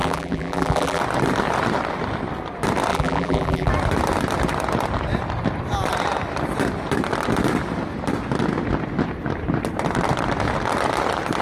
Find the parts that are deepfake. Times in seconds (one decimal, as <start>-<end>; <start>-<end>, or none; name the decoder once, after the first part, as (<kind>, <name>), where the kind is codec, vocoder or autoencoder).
0.0-1.0 (vocoder, BigVGAN v2); 2.9-3.7